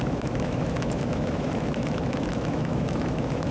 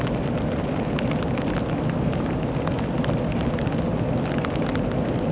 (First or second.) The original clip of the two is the second